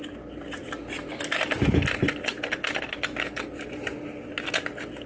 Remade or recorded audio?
recorded